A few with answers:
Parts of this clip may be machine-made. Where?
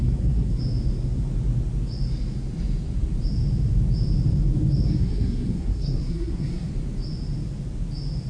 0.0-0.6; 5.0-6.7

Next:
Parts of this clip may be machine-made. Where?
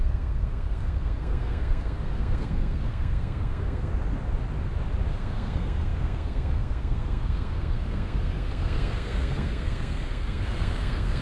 0.0-3.9; 5.1-11.2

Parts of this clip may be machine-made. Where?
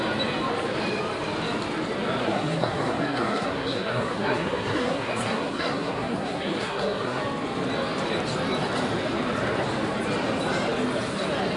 2.2-7.2